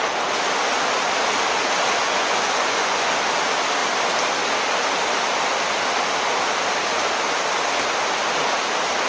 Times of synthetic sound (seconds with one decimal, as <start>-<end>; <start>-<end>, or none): 2.0-3.1